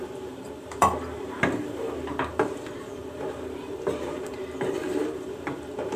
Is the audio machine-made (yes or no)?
yes